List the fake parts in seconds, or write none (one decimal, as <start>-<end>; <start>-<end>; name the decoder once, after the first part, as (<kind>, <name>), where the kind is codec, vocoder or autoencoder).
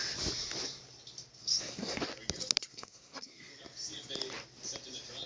1.4-2.0 (codec, SNAC); 2.7-3.5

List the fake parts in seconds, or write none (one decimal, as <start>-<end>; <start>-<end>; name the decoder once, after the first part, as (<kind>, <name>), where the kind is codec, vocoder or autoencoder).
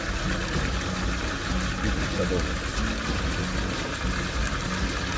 none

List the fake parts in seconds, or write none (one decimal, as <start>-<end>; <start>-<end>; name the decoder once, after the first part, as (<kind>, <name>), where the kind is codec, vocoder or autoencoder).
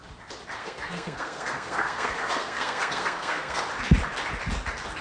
0.6-3.6 (codec, SNAC)